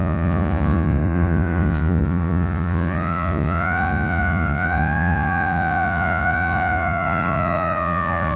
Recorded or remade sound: remade